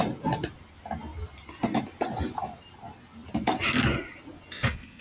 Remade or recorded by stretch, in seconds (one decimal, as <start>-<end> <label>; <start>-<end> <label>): 0.0-0.6 remade; 0.6-1.1 recorded; 1.1-1.8 remade; 1.8-3.2 recorded; 3.2-4.3 remade; 4.3-5.0 recorded